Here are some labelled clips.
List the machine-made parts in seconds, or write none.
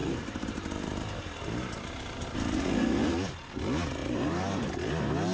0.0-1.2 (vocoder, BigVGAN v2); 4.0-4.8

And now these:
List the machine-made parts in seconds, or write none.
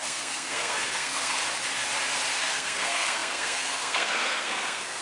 0.0-1.4 (codec, SNAC); 2.4-5.0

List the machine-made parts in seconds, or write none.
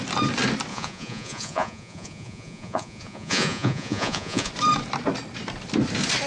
0.7-4.5 (vocoder, Vocos)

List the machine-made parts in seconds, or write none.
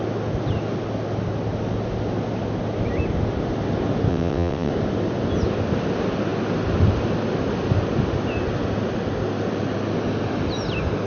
4.1-4.7 (vocoder, WaveNeXt)